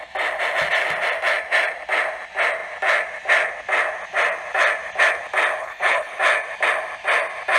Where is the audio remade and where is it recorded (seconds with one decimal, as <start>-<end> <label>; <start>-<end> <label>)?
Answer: 0.0-5.6 recorded; 5.6-6.2 remade; 6.2-7.6 recorded